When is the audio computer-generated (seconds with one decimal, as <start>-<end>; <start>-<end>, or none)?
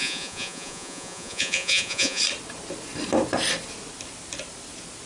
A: 0.0-2.2